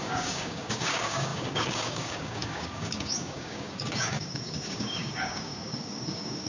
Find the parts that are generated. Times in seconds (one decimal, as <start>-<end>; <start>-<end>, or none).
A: 0.0-6.5